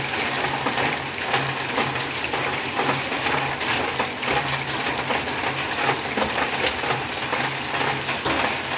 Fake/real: real